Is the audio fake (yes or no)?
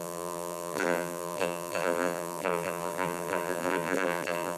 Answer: yes